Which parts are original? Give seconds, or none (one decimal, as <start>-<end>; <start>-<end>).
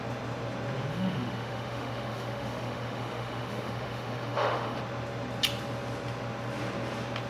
0.0-0.9; 4.8-7.3